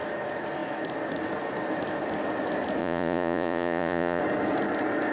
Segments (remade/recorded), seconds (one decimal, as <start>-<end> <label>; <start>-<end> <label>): 0.0-2.8 recorded; 2.8-4.2 remade; 4.2-5.1 recorded